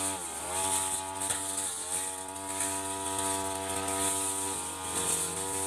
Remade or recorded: recorded